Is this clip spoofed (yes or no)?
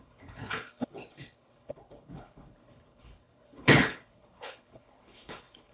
yes